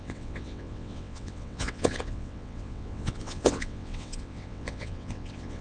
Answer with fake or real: fake